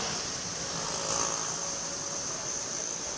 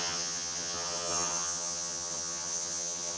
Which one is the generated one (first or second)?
second